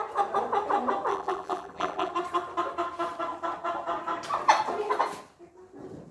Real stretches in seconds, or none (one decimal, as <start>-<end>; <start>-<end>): 0.0-1.1; 2.1-6.1